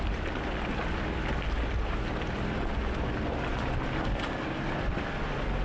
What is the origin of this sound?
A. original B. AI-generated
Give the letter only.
A